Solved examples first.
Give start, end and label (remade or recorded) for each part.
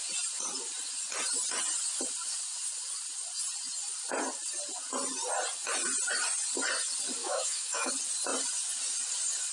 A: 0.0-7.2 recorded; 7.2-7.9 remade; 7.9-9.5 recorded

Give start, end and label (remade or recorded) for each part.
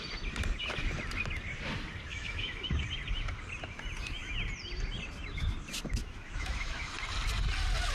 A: 0.0-2.1 recorded; 2.1-2.7 remade; 2.7-6.0 recorded; 6.0-6.9 remade; 6.9-7.9 recorded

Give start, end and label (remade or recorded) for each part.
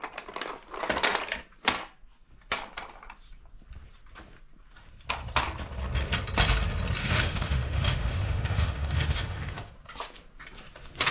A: 0.0-7.0 recorded; 7.0-9.7 remade; 9.7-11.1 recorded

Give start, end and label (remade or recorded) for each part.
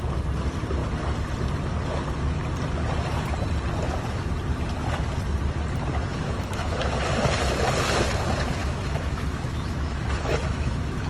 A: 0.0-6.1 recorded; 6.1-6.9 remade; 6.9-8.6 recorded; 8.6-11.1 remade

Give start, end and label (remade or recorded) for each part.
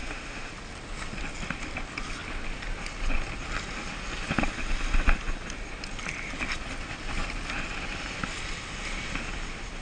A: 0.0-0.5 remade; 0.5-9.8 recorded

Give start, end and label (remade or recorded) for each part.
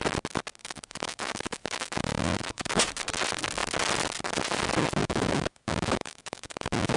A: 0.0-0.6 recorded; 0.6-2.8 remade; 2.8-5.0 recorded; 5.0-7.0 remade